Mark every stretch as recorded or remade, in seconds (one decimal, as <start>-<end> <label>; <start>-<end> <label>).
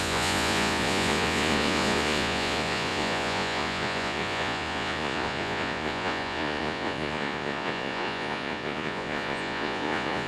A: 0.0-10.3 remade